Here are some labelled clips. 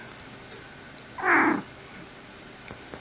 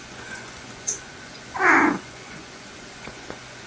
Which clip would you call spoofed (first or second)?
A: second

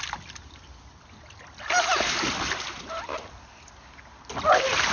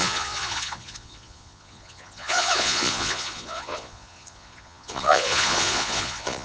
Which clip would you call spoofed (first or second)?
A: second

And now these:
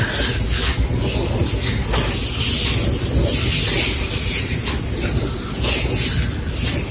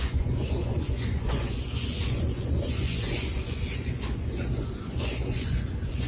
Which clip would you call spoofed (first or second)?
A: second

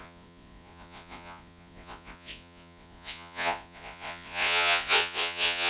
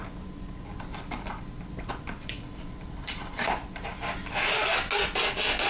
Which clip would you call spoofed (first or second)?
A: first